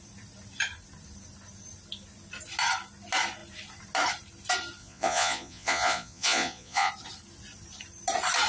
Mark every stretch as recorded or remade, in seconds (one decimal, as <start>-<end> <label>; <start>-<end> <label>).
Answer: 0.0-4.8 recorded; 4.8-6.9 remade; 6.9-8.5 recorded